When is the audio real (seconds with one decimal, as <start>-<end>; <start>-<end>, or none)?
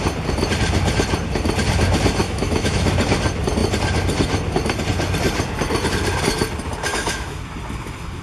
0.0-2.2; 2.9-6.9; 7.4-8.2